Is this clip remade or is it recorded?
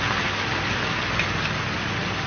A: recorded